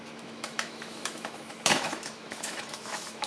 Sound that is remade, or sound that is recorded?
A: remade